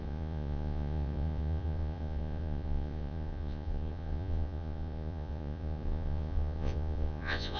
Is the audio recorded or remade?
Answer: remade